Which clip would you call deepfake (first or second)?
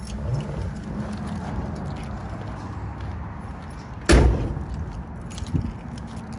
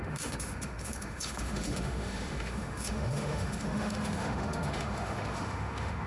second